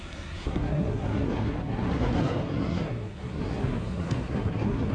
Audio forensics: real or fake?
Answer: fake